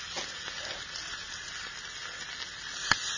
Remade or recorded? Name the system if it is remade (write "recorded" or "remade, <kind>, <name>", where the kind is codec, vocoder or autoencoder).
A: recorded